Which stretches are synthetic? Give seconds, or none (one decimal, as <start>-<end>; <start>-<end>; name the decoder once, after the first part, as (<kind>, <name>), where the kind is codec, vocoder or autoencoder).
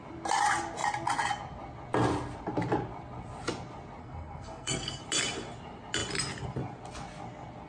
4.0-5.0 (codec, SNAC)